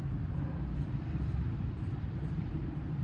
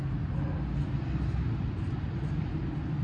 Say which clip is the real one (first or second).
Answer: second